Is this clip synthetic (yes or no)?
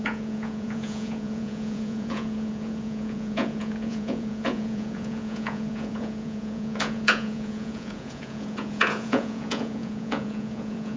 yes